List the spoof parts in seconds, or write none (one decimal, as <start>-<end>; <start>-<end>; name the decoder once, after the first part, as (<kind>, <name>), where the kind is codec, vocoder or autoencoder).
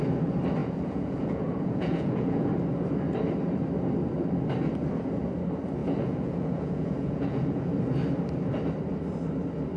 0.6-2.5 (vocoder, Vocos); 5.8-7.7